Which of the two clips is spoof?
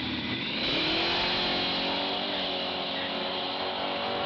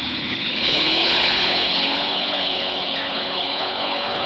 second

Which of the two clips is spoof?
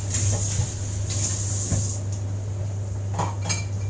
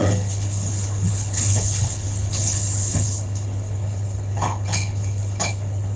second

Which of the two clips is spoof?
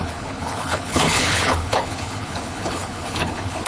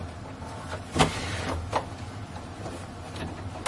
first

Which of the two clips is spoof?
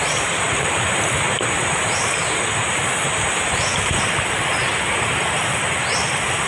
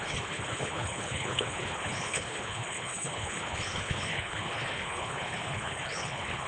second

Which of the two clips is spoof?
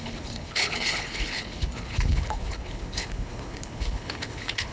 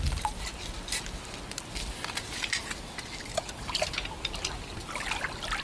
first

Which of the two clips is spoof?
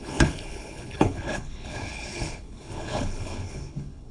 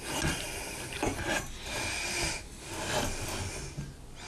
first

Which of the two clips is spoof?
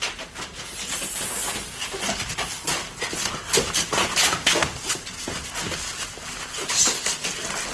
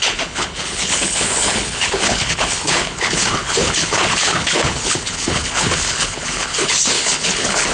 second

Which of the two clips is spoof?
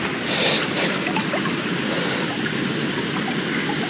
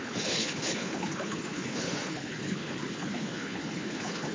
second